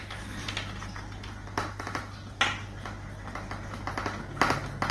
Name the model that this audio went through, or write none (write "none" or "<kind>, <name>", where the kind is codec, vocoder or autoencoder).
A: none